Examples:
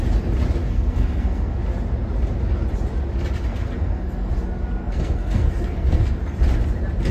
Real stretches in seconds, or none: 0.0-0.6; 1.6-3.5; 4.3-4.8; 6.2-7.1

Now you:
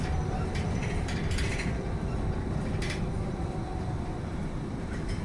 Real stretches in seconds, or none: 3.7-4.2

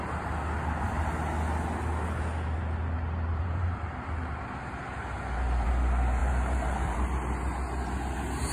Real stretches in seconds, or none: 0.0-3.3; 5.7-6.2; 7.1-8.5

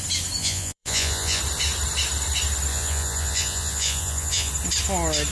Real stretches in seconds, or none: 0.0-0.4; 1.4-2.7; 4.5-5.3